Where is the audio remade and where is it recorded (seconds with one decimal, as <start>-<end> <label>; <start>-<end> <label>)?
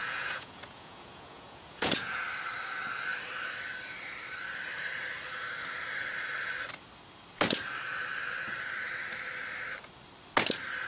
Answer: 0.0-2.2 remade; 2.2-10.9 recorded